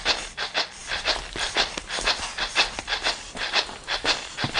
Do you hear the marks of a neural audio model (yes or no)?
yes